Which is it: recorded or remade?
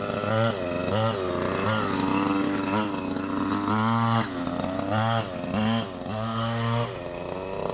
recorded